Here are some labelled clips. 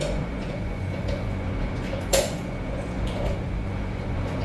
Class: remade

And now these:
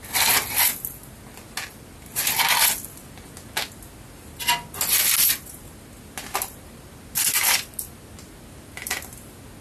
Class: recorded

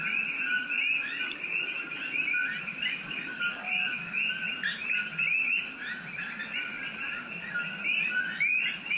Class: recorded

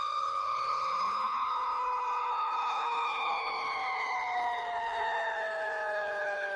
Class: remade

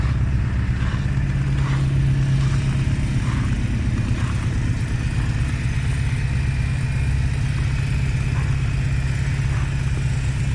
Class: recorded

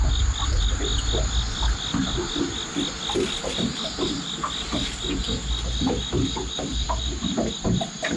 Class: recorded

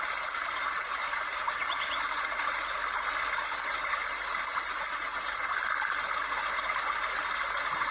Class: recorded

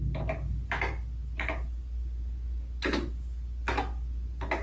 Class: recorded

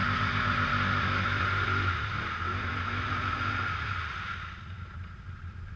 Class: recorded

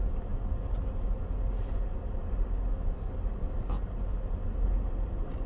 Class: recorded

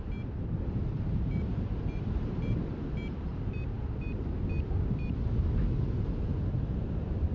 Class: recorded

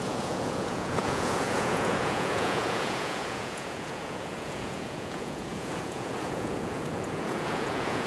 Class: remade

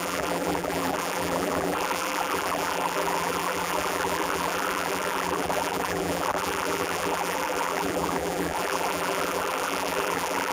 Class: remade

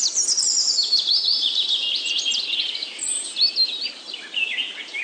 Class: remade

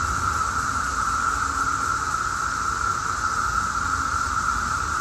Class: recorded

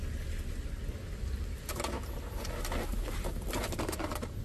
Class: recorded